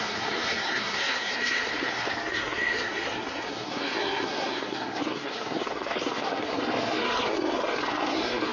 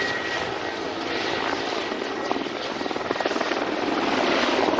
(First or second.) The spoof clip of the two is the first